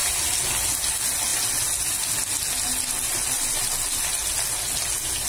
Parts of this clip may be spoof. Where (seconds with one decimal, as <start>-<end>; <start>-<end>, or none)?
none